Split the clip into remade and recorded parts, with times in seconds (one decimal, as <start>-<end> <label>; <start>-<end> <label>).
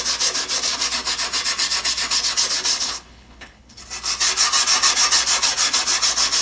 0.0-2.7 recorded; 2.7-3.8 remade; 3.8-6.4 recorded